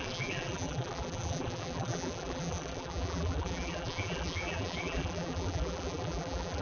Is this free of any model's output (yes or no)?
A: no